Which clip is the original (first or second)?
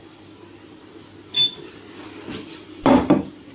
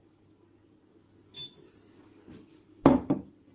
second